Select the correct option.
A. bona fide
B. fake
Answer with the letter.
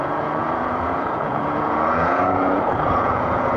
B